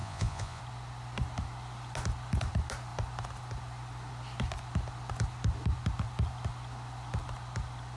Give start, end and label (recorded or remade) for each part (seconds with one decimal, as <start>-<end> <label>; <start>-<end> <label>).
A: 0.0-0.6 remade; 0.6-8.0 recorded